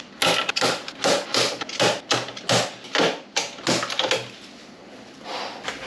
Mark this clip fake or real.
real